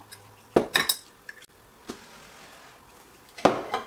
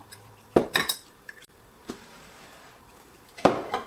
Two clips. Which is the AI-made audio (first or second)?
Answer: second